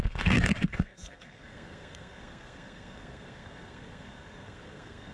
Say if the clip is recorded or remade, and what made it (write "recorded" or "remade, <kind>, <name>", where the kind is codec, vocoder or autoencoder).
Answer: remade, codec, SNAC